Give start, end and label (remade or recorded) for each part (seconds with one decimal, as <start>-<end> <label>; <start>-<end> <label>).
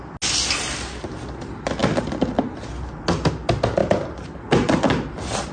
0.0-5.5 recorded